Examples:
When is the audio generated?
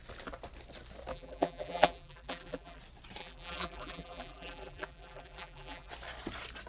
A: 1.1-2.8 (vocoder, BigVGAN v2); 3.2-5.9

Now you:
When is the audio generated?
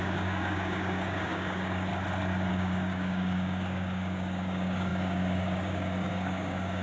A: 0.0-1.9 (codec, DAC); 2.5-6.8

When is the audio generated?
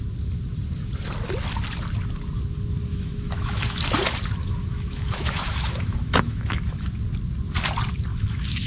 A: 2.9-3.8 (autoencoder, DAC-VAE); 4.4-6.9; 8.1-8.7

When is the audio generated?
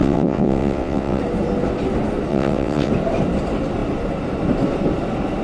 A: 0.0-1.2 (vocoder, WaveNeXt); 2.3-2.9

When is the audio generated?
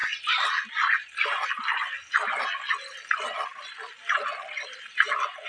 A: none